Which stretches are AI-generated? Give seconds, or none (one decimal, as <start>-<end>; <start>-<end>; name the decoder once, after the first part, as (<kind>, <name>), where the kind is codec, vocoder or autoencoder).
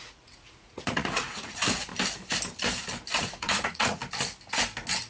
0.0-1.9 (vocoder, Vocos); 3.2-4.0